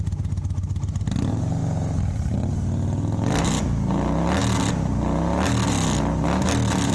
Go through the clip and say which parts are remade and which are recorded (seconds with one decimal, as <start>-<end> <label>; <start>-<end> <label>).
0.0-1.6 recorded; 1.6-2.5 remade; 2.5-6.9 recorded